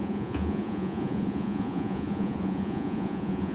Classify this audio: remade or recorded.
remade